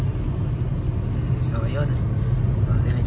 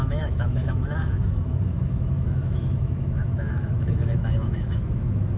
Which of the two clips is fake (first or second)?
second